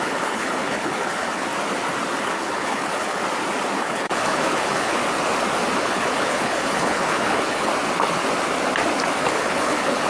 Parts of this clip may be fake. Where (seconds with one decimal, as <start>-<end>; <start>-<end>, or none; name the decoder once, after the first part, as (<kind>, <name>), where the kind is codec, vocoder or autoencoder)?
0.0-1.5 (codec, HILCodec); 2.2-3.2; 3.8-5.0; 5.8-7.7; 9.3-10.1